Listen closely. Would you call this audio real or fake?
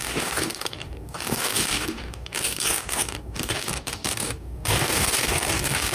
fake